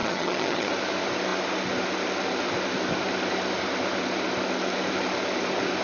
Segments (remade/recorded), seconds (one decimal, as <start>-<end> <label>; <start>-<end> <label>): 0.0-0.7 remade; 0.7-5.8 recorded